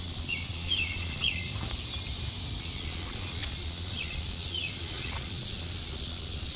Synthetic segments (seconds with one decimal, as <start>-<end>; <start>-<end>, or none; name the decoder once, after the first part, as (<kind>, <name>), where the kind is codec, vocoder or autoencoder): 0.0-1.5 (vocoder, Vocos); 2.6-6.6